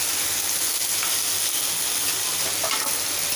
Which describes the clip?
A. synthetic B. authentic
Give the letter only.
B